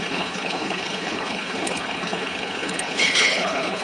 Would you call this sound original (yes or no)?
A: no